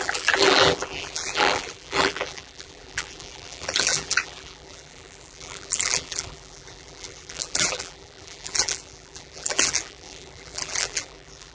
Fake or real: fake